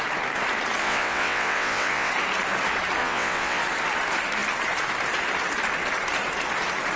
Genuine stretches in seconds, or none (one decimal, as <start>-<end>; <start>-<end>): 0.0-0.8; 2.1-3.0; 3.6-7.0